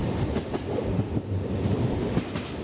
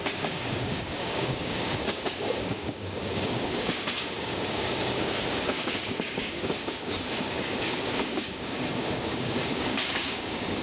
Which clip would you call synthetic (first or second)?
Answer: second